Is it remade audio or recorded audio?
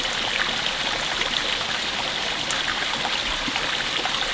recorded